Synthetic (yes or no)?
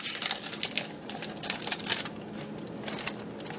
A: no